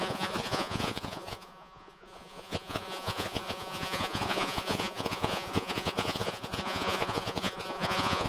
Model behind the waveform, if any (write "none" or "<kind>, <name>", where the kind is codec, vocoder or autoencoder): vocoder, Vocos